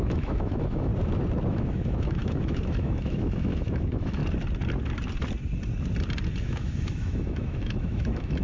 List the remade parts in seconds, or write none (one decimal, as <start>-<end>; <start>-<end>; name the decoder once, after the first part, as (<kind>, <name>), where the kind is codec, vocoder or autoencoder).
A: 0.0-0.9 (autoencoder, DAC-VAE); 1.5-4.2; 6.4-8.4